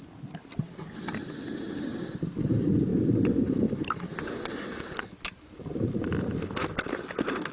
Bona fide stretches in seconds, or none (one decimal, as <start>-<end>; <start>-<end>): 0.0-7.5